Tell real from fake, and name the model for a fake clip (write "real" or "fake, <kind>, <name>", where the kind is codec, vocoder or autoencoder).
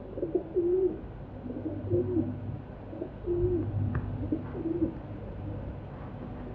real